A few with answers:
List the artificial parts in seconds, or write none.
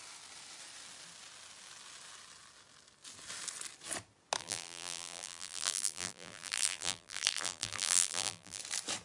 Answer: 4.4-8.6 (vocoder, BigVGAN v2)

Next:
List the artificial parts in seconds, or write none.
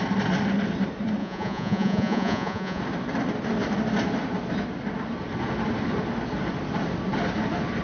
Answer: 1.2-2.8 (vocoder, Vocos)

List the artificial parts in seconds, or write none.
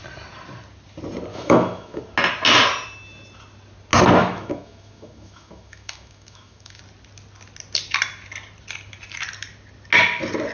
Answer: 1.3-2.0 (autoencoder, DAC-VAE); 4.2-6.8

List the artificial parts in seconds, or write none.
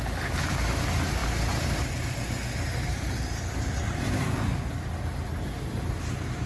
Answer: none